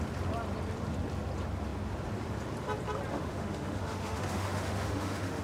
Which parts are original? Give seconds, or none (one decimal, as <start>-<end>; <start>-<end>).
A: 0.0-3.1